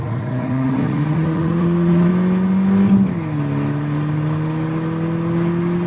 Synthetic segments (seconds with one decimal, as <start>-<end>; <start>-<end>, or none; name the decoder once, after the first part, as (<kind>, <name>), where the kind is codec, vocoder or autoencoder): 0.0-2.1 (vocoder, Vocos)